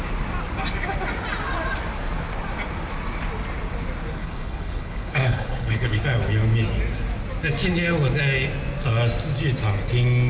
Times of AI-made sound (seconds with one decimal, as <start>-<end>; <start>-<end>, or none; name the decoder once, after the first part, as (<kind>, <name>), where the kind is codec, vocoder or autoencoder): 4.2-6.0 (codec, HILCodec)